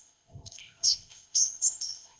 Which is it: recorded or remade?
remade